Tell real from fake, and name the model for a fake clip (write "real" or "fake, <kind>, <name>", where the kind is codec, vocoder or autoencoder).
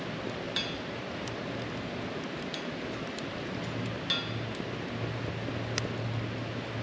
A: real